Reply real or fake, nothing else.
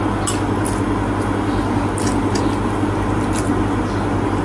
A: real